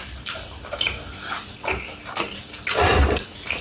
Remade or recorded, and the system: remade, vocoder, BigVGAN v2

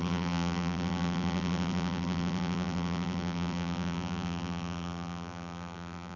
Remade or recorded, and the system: remade, vocoder, BigVGAN v2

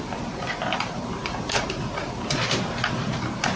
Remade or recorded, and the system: remade, vocoder, BigVGAN v2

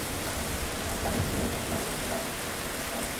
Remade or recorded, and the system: recorded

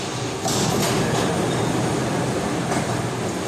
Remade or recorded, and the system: recorded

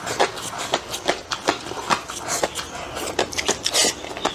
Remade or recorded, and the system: recorded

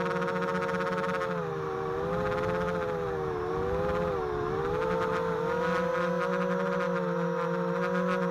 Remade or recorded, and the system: recorded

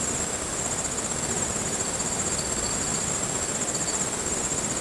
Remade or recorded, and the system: recorded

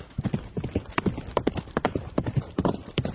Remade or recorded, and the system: remade, vocoder, BigVGAN v2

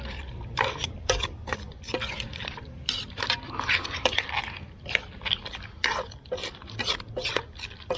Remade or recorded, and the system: remade, vocoder, BigVGAN v2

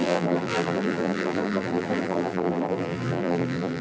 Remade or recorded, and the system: remade, vocoder, BigVGAN v2